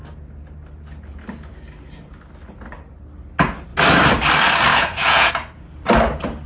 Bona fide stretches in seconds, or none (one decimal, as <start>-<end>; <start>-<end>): 0.0-4.7; 5.3-6.5